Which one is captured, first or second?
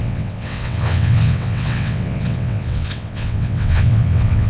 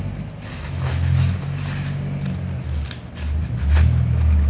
second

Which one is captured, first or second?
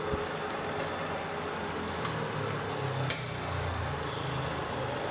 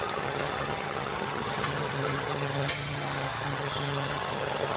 first